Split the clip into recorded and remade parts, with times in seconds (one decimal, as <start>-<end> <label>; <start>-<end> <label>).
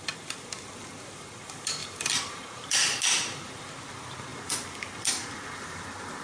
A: 0.0-6.2 recorded